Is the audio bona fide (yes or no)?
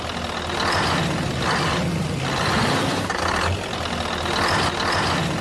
yes